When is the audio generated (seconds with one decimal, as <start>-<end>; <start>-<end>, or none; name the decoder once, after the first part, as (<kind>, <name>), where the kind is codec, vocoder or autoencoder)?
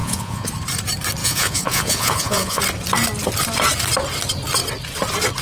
0.0-0.5 (vocoder, Vocos); 1.2-2.6